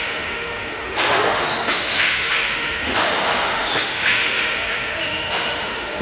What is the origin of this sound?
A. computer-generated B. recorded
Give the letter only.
A